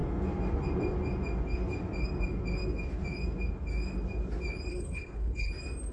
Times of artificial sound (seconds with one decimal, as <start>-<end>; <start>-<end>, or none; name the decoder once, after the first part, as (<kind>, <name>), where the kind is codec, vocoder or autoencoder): 4.7-5.5 (codec, HILCodec)